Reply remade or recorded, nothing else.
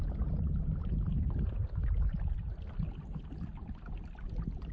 recorded